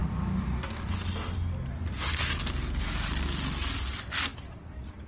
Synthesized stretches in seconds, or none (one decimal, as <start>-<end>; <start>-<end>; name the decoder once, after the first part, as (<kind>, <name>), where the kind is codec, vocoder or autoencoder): none